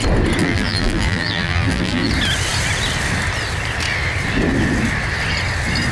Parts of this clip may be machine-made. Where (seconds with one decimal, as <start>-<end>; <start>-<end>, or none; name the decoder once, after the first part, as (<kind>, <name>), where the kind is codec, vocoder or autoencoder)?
0.4-2.1 (vocoder, BigVGAN v2)

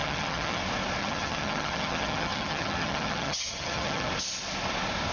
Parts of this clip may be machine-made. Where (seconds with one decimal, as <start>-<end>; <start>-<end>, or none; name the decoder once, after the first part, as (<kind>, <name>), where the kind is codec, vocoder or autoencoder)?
0.0-0.6 (vocoder, HiFi-GAN); 1.0-4.1

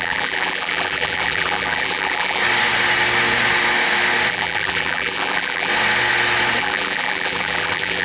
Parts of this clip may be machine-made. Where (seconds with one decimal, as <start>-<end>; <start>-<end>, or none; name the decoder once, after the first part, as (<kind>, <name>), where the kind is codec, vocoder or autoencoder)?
0.0-2.4 (vocoder, BigVGAN v2); 4.3-5.7; 6.6-8.0

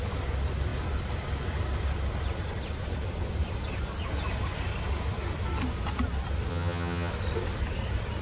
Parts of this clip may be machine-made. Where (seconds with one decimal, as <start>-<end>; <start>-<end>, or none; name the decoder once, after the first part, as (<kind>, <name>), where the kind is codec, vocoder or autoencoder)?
6.5-7.1 (vocoder, HiFi-GAN)

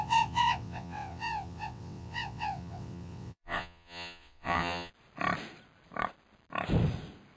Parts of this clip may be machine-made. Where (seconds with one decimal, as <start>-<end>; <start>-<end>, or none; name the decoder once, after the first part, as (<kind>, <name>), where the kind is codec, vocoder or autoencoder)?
0.0-4.9 (vocoder, WaveNeXt)

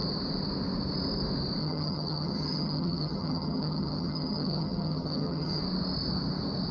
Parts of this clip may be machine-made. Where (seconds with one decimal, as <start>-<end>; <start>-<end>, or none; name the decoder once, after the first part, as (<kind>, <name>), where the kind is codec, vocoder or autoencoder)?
1.6-5.6 (vocoder, HiFi-GAN)

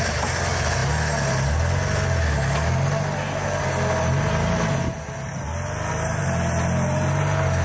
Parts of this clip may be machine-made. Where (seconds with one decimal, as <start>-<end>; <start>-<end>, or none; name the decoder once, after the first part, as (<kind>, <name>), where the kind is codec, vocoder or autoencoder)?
none

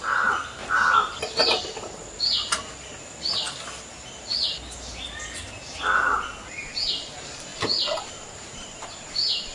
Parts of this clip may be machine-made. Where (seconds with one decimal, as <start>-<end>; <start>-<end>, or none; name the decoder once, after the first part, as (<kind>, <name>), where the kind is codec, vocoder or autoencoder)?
0.0-0.6 (vocoder, BigVGAN v2); 1.4-2.0; 6.6-7.5; 8.1-9.5